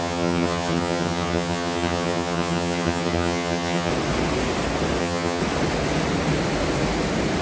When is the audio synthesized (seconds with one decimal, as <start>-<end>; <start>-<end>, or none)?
0.0-3.9; 5.0-5.4